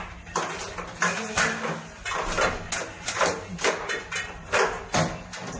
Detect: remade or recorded recorded